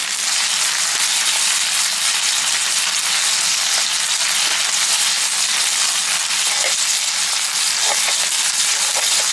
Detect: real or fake real